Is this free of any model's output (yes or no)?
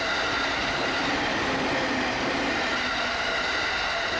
yes